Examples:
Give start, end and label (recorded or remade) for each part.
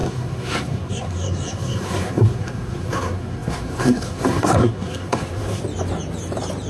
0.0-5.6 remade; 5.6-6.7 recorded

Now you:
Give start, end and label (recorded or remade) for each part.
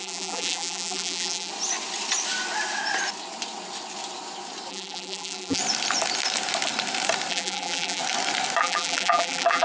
0.0-1.5 remade; 1.5-4.7 recorded; 4.7-5.6 remade; 5.6-7.3 recorded; 7.3-8.0 remade; 8.0-8.6 recorded; 8.6-9.6 remade